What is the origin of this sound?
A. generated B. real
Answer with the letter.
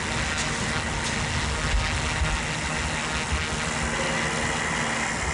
B